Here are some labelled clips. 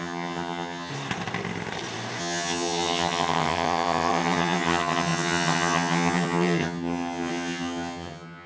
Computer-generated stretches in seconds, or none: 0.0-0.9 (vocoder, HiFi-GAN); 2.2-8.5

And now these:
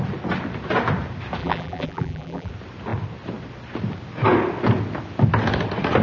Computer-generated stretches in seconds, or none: 1.4-2.5 (vocoder, BigVGAN v2)

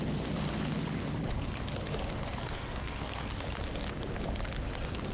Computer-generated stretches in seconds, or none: 2.4-3.3 (codec, SNAC)

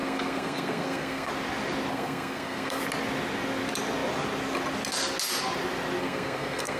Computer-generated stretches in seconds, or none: 0.0-1.3 (codec, SNAC); 1.9-2.8; 6.0-6.8

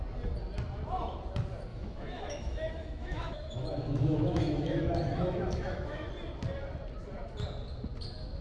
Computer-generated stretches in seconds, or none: 1.7-6.1 (autoencoder, DAC-VAE)

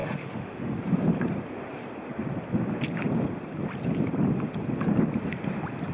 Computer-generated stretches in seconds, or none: 0.0-0.8 (autoencoder, DAC-VAE)